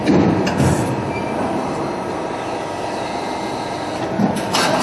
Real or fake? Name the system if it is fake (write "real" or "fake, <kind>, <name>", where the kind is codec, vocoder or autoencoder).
real